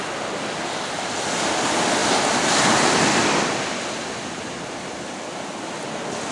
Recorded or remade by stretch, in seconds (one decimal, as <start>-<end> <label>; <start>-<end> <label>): 0.0-6.3 recorded